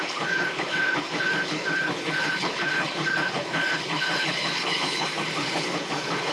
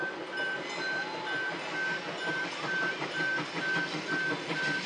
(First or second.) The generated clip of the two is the first